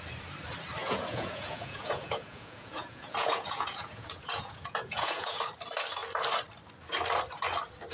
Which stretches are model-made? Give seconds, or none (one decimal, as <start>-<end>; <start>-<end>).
0.8-5.4